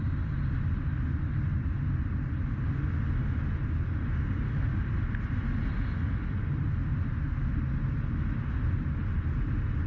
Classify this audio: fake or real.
real